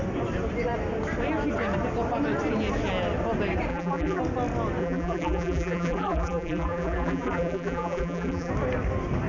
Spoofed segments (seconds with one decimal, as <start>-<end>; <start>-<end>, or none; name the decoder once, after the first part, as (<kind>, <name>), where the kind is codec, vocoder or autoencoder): 3.7-4.2 (vocoder, BigVGAN v2); 4.8-8.5